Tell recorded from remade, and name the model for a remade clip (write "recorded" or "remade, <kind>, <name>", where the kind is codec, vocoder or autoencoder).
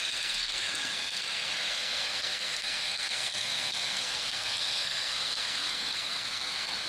remade, codec, SNAC